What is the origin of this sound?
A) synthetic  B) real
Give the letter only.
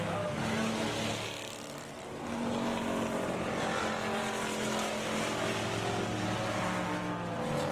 B